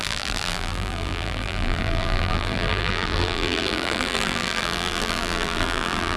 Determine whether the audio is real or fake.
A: fake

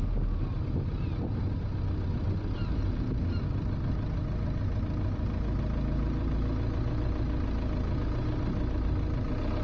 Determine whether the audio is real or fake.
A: real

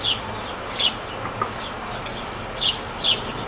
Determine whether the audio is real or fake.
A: real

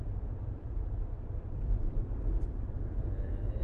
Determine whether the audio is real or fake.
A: fake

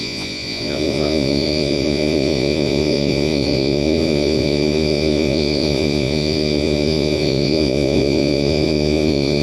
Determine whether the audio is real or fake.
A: fake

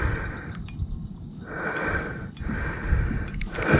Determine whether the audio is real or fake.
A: real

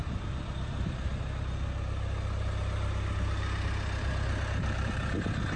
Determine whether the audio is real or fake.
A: real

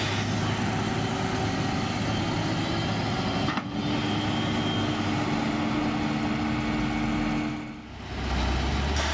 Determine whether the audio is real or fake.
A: real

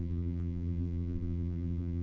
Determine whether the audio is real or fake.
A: fake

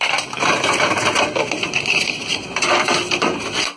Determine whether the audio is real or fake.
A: real